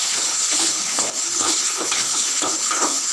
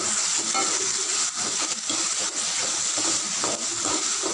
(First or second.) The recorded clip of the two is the second